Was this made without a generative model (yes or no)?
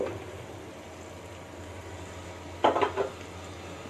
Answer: yes